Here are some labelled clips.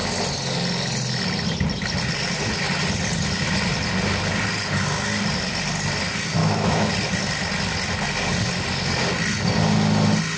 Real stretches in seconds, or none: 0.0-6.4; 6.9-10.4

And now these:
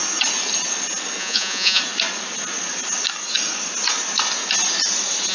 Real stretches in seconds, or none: 0.0-1.2; 1.8-5.3

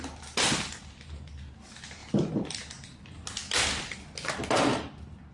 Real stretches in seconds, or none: 0.0-5.3

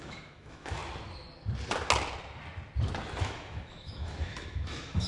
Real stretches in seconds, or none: 0.8-3.2